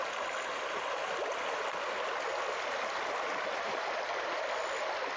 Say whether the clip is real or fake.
real